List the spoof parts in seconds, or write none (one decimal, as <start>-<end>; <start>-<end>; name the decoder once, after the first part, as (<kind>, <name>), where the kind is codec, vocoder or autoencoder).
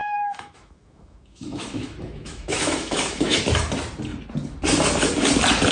0.0-3.4 (autoencoder, DAC-VAE)